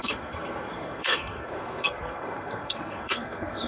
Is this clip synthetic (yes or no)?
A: yes